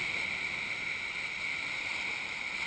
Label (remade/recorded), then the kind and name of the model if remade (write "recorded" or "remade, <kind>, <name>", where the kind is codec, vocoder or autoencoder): recorded